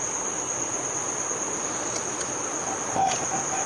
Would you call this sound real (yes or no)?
yes